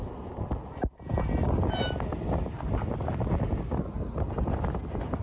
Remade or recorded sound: recorded